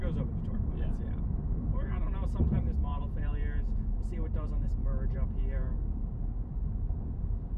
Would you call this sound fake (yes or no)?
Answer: yes